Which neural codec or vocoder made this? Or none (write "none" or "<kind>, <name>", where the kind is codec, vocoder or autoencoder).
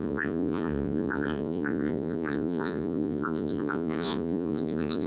vocoder, Vocos